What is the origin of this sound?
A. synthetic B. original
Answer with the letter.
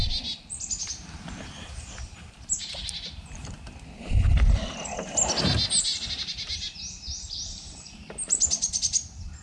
B